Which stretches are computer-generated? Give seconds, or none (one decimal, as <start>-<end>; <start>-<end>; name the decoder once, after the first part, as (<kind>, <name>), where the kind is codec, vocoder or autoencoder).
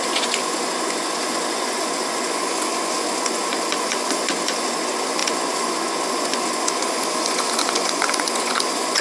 0.0-9.0 (vocoder, Vocos)